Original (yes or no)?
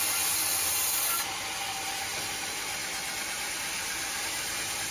yes